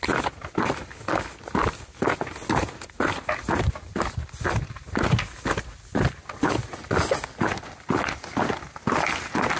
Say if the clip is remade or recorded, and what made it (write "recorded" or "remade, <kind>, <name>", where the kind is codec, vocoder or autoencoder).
recorded